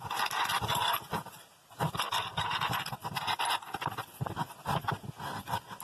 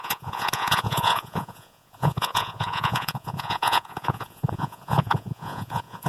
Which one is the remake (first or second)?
second